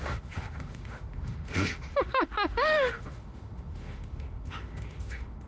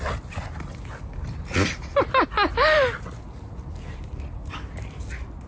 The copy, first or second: first